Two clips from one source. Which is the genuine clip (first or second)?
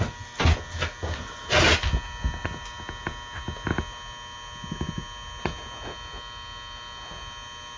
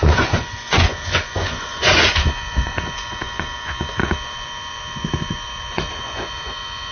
first